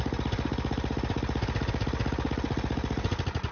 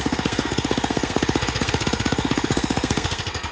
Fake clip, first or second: second